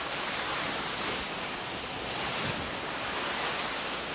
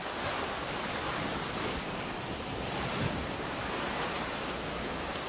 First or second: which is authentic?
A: first